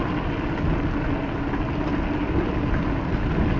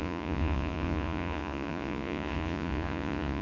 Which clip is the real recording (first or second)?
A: first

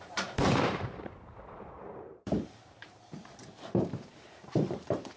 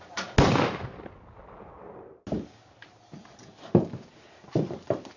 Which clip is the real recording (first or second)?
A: second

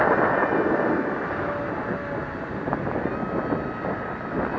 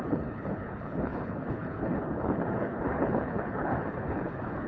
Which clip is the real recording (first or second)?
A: first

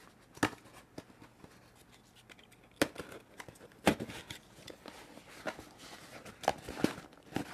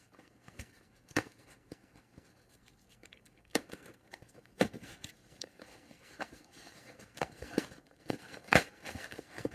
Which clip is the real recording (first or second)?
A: first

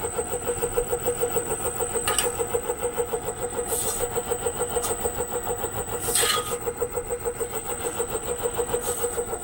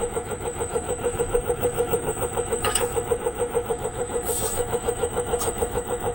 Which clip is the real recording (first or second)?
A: first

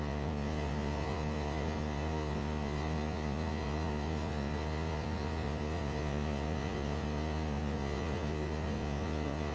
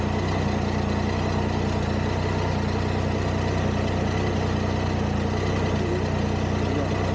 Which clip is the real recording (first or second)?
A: second